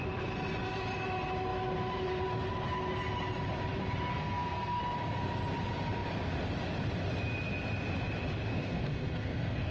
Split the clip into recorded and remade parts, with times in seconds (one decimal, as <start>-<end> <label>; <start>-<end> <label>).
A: 0.0-4.1 recorded; 4.1-4.8 remade; 4.8-8.5 recorded; 8.5-9.7 remade